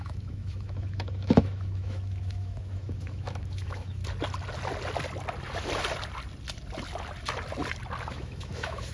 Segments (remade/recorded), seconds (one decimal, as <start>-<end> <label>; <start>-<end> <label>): 0.0-4.0 remade; 4.0-8.1 recorded; 8.1-8.9 remade